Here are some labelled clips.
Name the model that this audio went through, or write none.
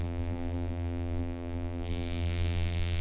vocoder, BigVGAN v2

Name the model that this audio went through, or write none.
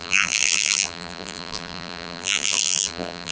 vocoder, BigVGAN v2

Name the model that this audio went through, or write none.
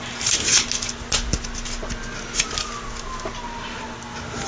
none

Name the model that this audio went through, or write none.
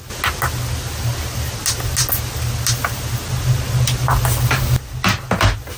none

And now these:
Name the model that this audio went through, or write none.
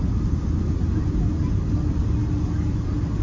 none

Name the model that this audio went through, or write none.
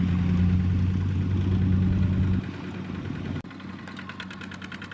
none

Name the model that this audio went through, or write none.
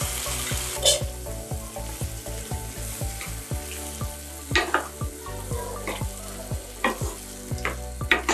none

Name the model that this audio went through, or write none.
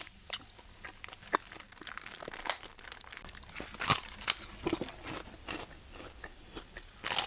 none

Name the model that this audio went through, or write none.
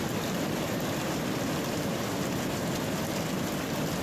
vocoder, BigVGAN v2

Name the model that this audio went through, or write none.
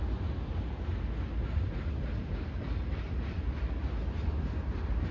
none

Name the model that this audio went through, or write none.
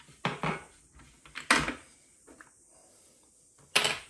none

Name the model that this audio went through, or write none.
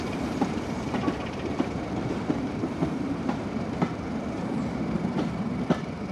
vocoder, BigVGAN v2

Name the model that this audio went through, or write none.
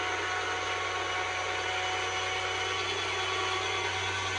none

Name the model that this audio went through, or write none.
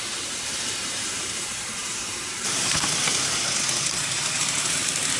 vocoder, BigVGAN v2